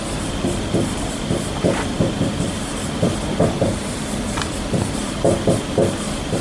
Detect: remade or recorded remade